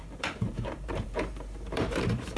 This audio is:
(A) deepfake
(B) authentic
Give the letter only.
A